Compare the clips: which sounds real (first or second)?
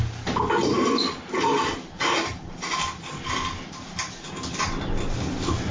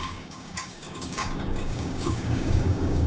first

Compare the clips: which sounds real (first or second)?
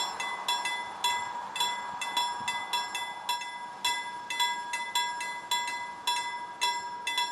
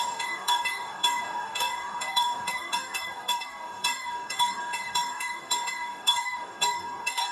first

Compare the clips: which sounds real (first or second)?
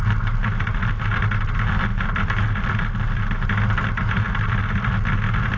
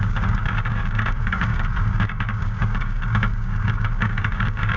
first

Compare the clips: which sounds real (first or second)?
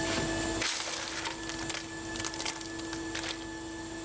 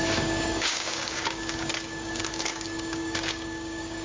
first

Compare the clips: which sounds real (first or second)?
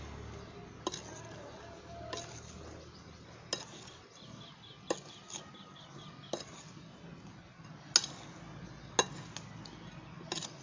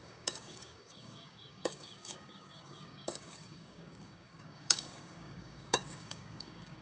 first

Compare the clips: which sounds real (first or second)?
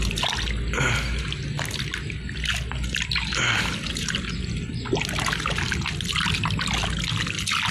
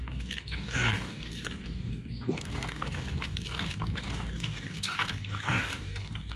first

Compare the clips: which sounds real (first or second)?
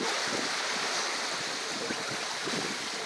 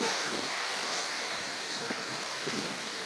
first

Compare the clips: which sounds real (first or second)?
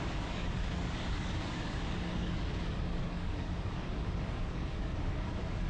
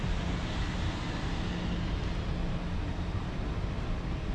second